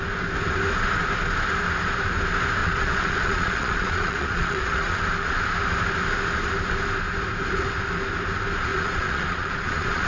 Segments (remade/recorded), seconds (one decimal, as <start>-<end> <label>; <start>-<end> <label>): 0.0-2.6 recorded; 2.6-5.0 remade; 5.0-8.7 recorded; 8.7-10.1 remade